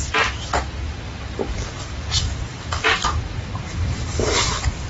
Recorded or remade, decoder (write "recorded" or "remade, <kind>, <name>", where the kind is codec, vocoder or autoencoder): remade, vocoder, BigVGAN v2